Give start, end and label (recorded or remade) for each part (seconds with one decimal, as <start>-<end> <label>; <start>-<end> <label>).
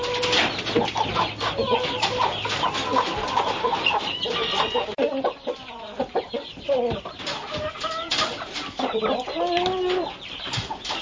0.0-11.0 recorded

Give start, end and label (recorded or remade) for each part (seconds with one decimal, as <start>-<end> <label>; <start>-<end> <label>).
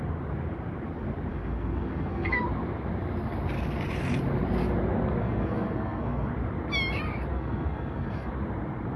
0.0-1.3 recorded; 1.3-2.4 remade; 2.4-5.2 recorded; 5.2-6.3 remade; 6.3-7.3 recorded; 7.3-8.3 remade; 8.3-9.0 recorded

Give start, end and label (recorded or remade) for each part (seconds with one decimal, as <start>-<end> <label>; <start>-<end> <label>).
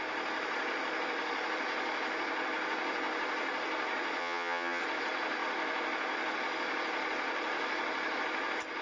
0.0-4.2 recorded; 4.2-4.8 remade; 4.8-8.8 recorded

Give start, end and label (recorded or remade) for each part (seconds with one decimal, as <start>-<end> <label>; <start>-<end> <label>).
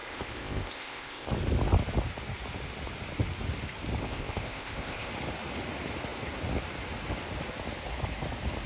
0.0-1.3 remade; 1.3-4.0 recorded; 4.0-5.1 remade; 5.1-8.7 recorded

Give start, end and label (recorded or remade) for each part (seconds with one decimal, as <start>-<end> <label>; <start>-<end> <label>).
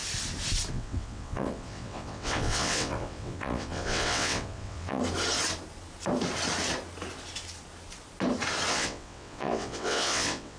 0.0-0.7 recorded; 0.7-5.0 remade; 5.0-8.7 recorded; 8.7-10.6 remade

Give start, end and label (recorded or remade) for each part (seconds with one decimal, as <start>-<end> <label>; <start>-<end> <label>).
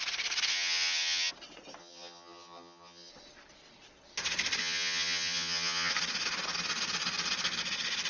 0.0-0.5 recorded; 0.5-1.3 remade; 1.3-1.8 recorded; 1.8-3.1 remade; 3.1-4.6 recorded; 4.6-5.9 remade; 5.9-8.1 recorded